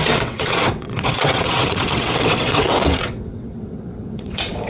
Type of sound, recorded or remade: remade